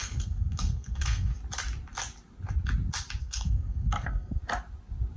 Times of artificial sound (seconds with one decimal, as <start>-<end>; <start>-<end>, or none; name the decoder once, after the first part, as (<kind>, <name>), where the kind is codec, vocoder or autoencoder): 0.0-1.3 (codec, SNAC); 3.2-4.4